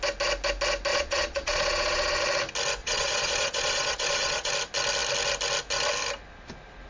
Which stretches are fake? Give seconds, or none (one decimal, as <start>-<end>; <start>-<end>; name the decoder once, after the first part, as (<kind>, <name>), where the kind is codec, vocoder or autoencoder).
0.9-2.2 (vocoder, Vocos); 2.8-4.5